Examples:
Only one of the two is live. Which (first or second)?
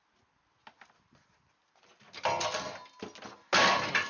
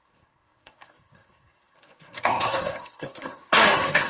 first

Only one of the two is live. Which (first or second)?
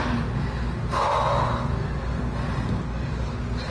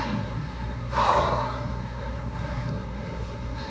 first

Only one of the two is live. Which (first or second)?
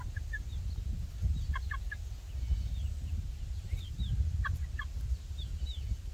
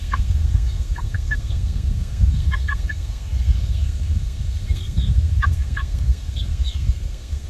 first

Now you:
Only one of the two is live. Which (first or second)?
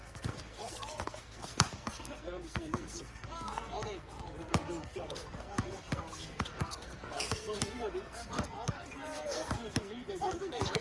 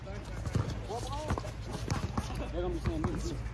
second